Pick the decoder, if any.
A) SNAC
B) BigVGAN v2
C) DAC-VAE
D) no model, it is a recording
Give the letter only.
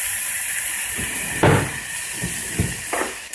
D